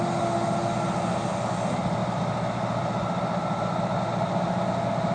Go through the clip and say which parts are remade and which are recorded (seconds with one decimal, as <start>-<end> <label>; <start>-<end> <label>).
0.0-5.1 recorded